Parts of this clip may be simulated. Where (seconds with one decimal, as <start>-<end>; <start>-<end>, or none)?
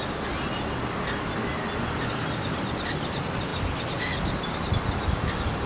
none